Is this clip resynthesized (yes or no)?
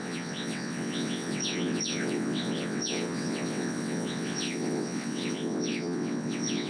yes